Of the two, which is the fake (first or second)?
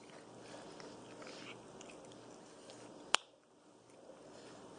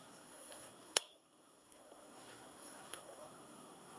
second